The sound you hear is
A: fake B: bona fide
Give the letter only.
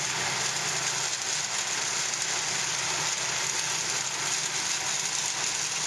B